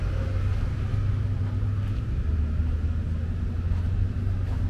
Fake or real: real